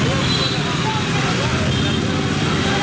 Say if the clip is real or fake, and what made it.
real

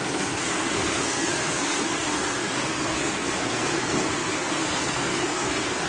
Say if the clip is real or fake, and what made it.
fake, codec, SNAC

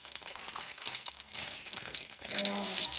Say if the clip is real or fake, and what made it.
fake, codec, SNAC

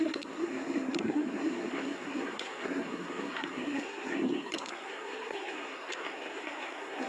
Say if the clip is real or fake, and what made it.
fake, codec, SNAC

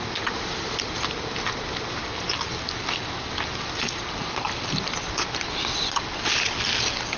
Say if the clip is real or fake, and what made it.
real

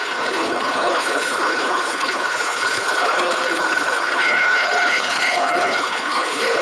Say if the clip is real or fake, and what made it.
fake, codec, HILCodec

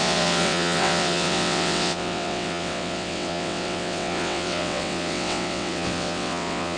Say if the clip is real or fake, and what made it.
fake, vocoder, WaveNeXt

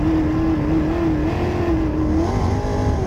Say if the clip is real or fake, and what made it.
real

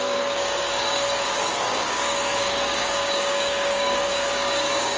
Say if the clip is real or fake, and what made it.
fake, codec, DAC